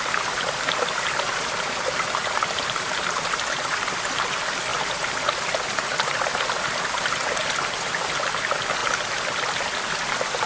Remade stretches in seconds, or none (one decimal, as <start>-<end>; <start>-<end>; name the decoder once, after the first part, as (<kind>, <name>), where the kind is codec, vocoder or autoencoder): none